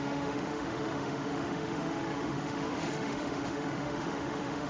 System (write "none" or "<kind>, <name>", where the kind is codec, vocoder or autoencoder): autoencoder, DAC-VAE